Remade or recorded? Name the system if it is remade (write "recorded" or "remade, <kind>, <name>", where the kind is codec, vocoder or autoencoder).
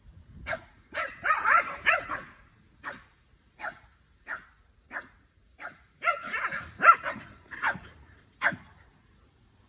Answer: remade, vocoder, Vocos